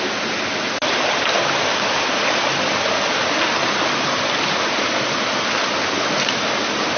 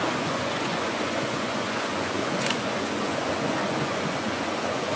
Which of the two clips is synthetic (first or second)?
second